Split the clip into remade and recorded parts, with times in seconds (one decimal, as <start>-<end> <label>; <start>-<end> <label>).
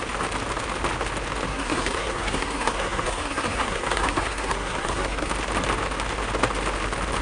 0.0-1.5 recorded; 1.5-5.3 remade; 5.3-7.2 recorded